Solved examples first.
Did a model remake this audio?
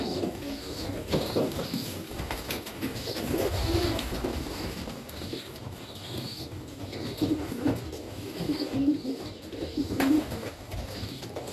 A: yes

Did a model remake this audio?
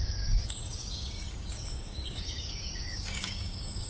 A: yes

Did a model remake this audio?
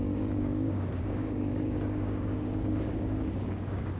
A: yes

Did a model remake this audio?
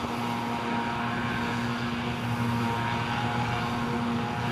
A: no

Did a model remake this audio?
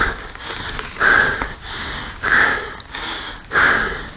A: yes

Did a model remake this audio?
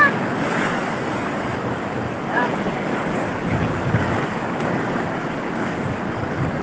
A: yes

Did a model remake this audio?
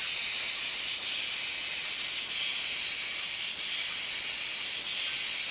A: no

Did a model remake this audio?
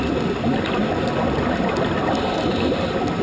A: no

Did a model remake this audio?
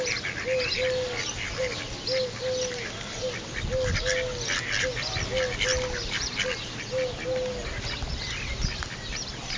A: no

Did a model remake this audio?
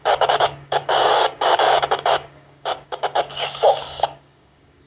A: yes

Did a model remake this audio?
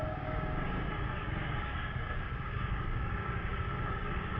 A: yes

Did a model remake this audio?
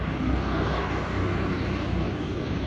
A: yes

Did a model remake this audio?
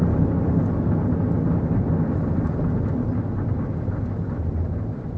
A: no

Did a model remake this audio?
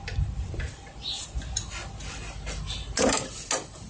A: no